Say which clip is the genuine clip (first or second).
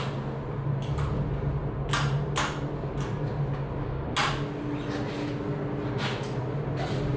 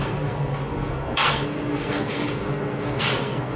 first